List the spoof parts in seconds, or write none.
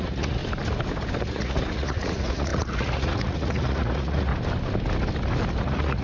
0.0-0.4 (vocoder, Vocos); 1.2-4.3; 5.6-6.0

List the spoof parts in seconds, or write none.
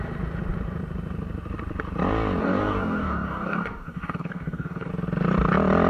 2.4-4.9 (codec, DAC)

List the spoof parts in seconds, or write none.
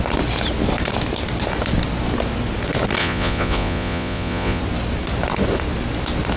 3.0-4.6 (vocoder, Vocos)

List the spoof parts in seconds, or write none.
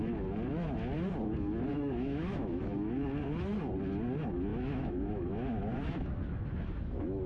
1.7-2.6 (autoencoder, DAC-VAE); 4.5-7.3